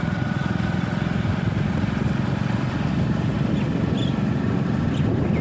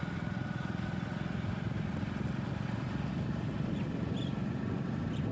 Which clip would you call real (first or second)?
second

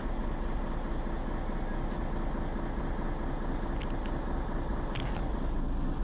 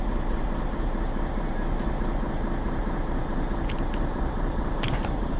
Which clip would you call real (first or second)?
first